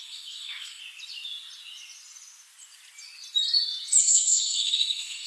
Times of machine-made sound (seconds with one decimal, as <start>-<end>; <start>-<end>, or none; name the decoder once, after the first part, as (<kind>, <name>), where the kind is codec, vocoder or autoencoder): 0.0-0.8 (codec, SNAC); 4.0-5.3